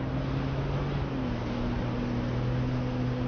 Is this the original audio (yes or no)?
yes